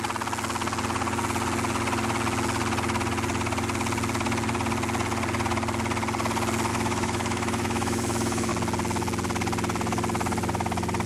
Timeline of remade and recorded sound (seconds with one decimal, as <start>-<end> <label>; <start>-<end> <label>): 0.0-6.7 recorded; 6.7-8.5 remade; 8.5-11.1 recorded